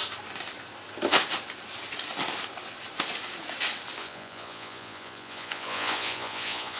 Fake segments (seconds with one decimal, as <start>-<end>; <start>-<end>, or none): 4.0-6.8

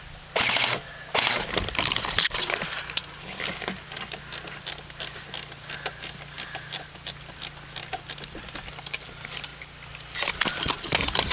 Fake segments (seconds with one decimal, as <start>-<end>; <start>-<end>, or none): none

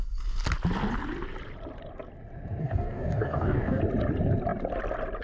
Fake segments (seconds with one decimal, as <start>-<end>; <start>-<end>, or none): 2.6-3.8

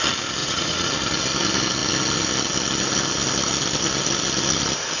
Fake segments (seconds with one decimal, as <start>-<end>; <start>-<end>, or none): 0.4-0.9

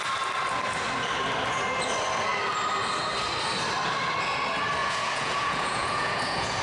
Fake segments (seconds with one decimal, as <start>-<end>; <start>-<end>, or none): 4.8-6.6

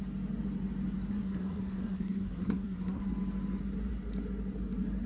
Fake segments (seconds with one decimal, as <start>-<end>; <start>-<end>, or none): 1.1-3.1

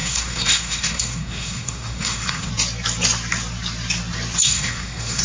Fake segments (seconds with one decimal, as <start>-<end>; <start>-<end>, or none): 0.0-2.5; 4.4-5.2